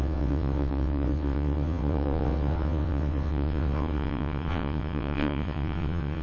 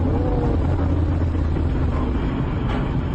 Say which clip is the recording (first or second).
second